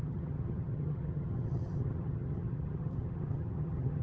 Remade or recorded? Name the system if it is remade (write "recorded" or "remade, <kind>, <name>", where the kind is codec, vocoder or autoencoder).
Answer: remade, vocoder, HiFi-GAN